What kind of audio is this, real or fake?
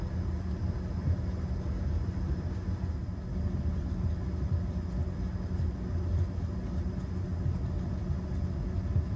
real